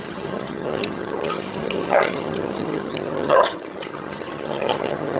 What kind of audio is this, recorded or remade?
remade